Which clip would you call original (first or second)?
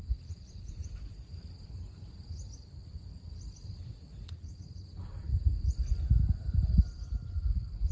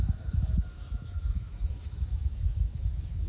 first